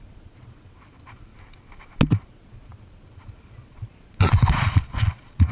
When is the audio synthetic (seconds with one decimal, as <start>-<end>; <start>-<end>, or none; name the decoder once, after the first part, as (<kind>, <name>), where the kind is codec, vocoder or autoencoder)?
0.0-1.3 (vocoder, Vocos); 2.3-5.5